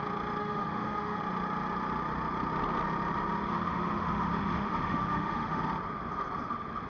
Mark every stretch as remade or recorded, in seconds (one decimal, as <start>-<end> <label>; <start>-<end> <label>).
0.0-0.4 recorded; 0.4-1.2 remade; 1.2-3.5 recorded; 3.5-5.6 remade; 5.6-6.9 recorded